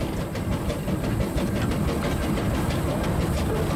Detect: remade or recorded recorded